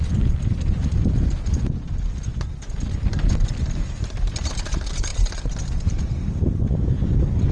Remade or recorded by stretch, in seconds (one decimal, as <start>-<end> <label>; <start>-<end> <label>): 0.0-0.8 remade; 0.8-3.3 recorded; 3.3-5.1 remade; 5.1-5.6 recorded; 5.6-7.5 remade